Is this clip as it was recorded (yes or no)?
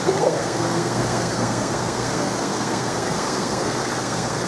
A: no